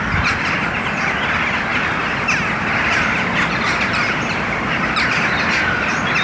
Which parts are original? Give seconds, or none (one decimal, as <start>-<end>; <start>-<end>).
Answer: 0.0-6.2